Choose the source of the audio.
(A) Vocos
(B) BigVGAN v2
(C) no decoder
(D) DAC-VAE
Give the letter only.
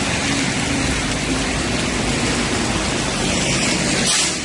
C